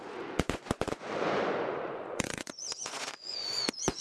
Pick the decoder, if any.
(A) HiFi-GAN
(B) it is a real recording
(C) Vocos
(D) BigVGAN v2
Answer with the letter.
C